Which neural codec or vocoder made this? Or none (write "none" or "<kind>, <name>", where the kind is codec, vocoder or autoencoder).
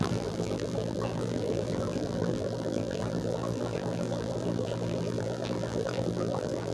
vocoder, BigVGAN v2